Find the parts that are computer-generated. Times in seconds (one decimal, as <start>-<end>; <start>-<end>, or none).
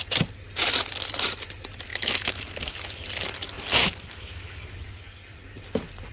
1.9-2.7; 3.8-4.7